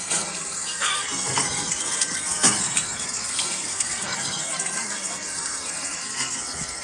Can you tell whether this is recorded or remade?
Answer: remade